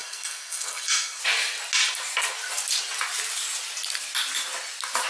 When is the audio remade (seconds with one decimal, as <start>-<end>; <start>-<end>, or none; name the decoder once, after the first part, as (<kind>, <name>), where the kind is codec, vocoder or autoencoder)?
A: 0.0-1.2 (codec, SNAC)

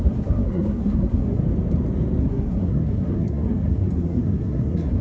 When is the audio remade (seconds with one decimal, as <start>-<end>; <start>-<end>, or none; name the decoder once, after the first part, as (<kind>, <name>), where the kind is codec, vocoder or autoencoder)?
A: 0.0-1.4 (codec, SNAC); 2.2-5.0

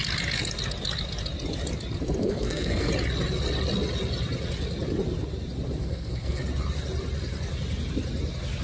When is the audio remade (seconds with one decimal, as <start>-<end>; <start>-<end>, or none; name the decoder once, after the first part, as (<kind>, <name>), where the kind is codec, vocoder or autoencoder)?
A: 2.2-2.9 (codec, SNAC); 5.8-6.4

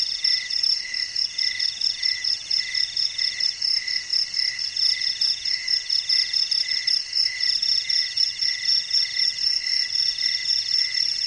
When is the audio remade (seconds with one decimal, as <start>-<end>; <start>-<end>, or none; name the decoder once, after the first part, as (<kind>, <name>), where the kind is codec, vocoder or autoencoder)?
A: none